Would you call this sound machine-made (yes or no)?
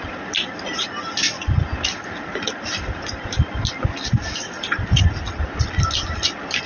no